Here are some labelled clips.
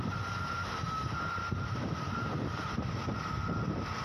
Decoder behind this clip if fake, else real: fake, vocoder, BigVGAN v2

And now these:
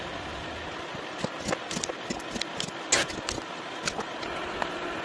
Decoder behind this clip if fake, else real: real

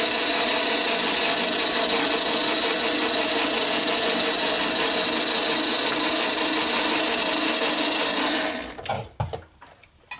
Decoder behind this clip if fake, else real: real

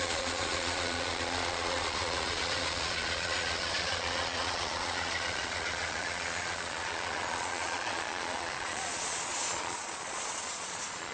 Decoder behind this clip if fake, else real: fake, vocoder, Vocos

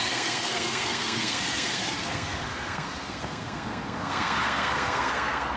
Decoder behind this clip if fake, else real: fake, codec, SNAC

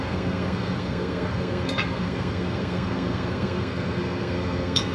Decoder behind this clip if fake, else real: fake, codec, SNAC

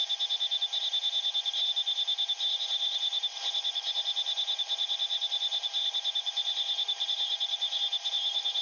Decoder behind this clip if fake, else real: real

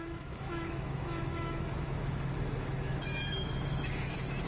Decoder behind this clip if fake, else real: fake, autoencoder, DAC-VAE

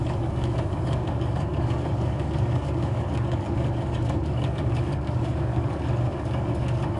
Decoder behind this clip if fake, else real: fake, codec, DAC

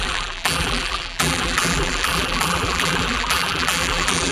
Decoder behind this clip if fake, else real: fake, vocoder, BigVGAN v2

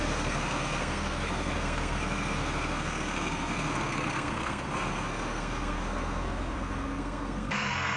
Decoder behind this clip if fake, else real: fake, codec, SNAC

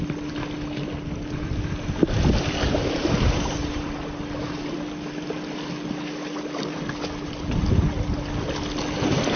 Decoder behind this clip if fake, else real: real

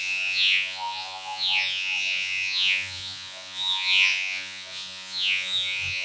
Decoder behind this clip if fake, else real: fake, vocoder, Vocos